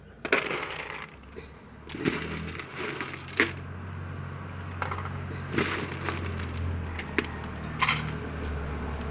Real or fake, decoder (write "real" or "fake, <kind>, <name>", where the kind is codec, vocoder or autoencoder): real